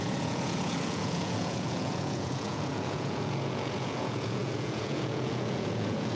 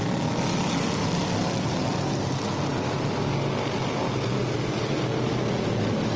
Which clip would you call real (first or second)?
second